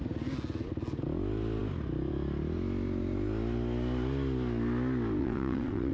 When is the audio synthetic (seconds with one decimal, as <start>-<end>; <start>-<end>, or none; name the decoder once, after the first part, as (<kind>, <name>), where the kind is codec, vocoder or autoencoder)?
5.2-5.9 (vocoder, WaveNeXt)